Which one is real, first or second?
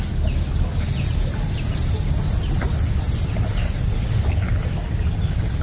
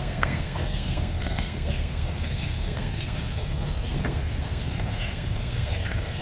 first